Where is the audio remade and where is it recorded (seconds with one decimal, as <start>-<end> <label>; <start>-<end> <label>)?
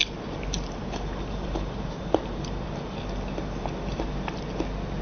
0.0-3.0 remade; 3.0-3.9 recorded; 3.9-4.4 remade; 4.4-5.0 recorded